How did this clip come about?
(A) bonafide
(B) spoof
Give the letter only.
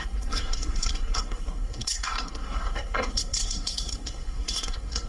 B